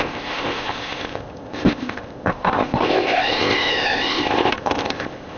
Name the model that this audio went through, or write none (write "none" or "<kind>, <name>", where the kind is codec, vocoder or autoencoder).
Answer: codec, ZipCodec